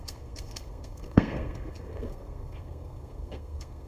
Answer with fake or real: fake